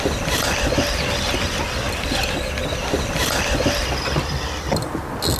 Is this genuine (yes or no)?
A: yes